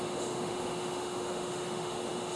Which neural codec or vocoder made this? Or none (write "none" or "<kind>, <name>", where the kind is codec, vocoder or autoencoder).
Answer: autoencoder, DAC-VAE